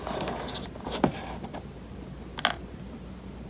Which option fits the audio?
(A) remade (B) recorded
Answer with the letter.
B